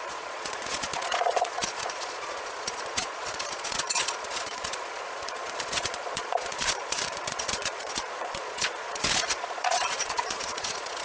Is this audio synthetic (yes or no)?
yes